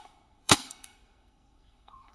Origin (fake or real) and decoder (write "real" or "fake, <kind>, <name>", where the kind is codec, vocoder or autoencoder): fake, codec, SNAC